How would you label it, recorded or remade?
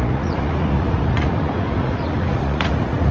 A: remade